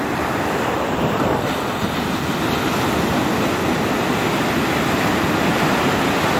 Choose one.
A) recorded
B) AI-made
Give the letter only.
B